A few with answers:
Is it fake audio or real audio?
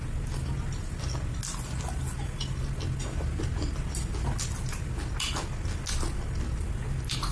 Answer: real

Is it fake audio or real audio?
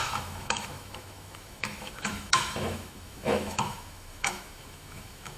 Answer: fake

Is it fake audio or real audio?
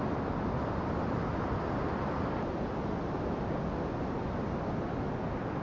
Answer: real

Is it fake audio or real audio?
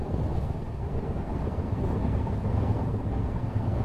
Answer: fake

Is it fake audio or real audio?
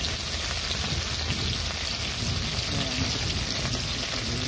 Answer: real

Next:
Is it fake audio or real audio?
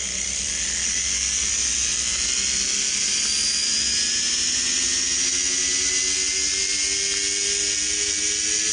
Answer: real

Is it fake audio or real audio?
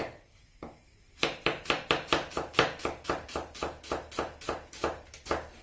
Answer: real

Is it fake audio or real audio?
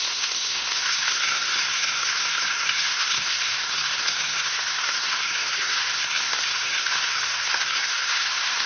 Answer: fake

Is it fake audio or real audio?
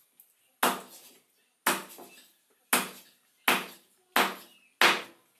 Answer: real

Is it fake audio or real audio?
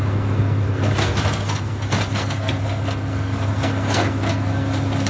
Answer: fake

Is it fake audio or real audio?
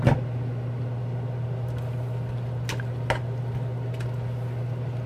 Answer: real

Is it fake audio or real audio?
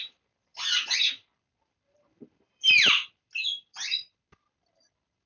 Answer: fake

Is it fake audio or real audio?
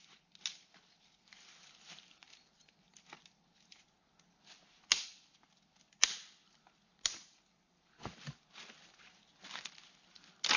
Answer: real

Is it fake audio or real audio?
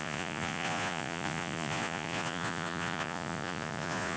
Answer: fake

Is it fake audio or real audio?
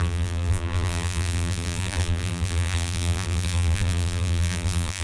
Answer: fake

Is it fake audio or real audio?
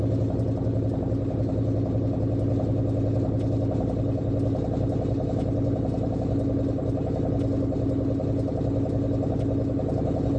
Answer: real